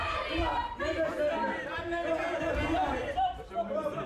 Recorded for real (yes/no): no